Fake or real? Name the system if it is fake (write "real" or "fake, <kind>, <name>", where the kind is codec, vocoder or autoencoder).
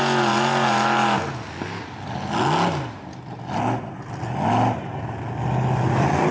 real